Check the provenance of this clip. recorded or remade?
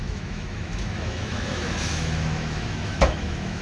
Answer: remade